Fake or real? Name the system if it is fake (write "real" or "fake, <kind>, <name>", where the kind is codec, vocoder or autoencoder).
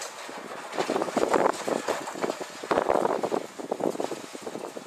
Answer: real